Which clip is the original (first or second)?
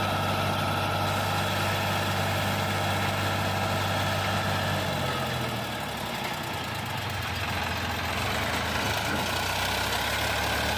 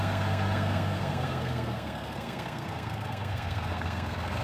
first